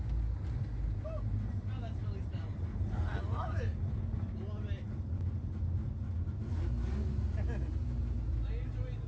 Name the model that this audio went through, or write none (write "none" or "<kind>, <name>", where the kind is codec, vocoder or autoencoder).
none